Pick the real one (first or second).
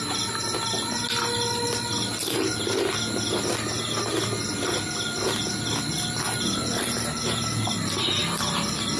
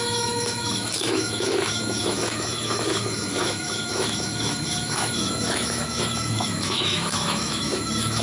first